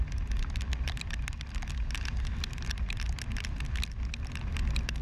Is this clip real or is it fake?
real